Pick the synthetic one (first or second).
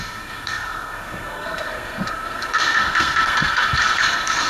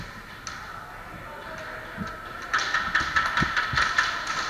first